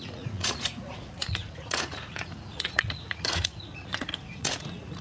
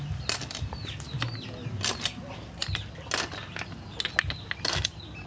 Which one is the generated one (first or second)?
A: first